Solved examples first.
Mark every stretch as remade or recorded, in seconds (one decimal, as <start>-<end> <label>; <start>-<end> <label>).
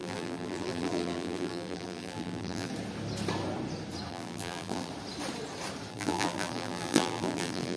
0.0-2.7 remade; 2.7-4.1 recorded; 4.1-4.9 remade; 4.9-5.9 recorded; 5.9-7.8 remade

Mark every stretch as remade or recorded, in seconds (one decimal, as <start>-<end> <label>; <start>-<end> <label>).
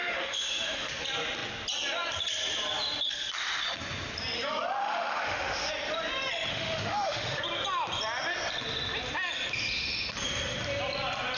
0.0-0.9 remade; 0.9-4.8 recorded; 4.8-5.7 remade; 5.7-6.5 recorded; 6.5-7.4 remade; 7.4-11.4 recorded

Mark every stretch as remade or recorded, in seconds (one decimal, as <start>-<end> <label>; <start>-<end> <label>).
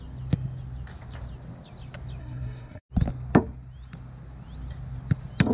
0.0-2.2 recorded; 2.2-2.8 remade; 2.8-5.5 recorded